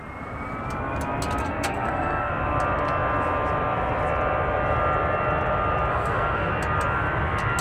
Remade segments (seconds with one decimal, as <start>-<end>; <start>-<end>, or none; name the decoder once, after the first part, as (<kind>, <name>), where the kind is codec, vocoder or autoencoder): 1.4-2.3 (codec, SNAC); 5.9-6.5